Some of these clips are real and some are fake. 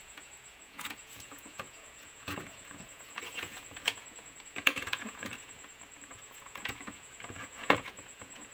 fake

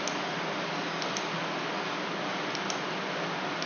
real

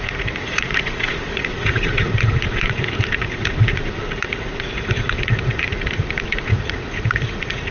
fake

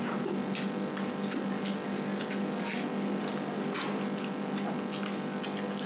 real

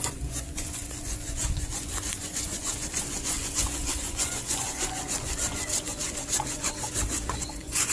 fake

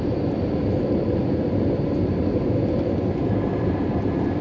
real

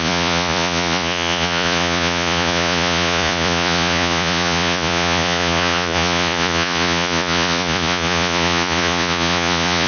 fake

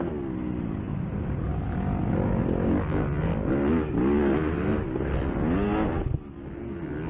real